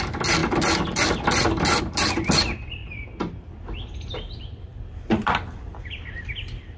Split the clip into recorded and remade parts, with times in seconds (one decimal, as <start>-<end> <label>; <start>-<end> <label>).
0.0-2.8 remade; 2.8-4.1 recorded; 4.1-6.8 remade